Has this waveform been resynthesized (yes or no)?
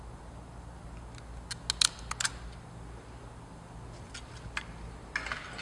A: no